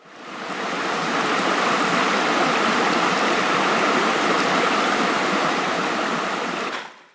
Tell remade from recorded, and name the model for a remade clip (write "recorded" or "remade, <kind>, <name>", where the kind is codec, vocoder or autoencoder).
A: remade, vocoder, BigVGAN v2